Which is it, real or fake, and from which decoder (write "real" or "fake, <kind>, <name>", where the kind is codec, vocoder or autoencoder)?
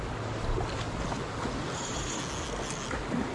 real